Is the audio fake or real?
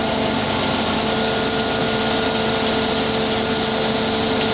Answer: real